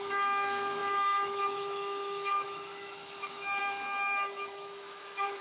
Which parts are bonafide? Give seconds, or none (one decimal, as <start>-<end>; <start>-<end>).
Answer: none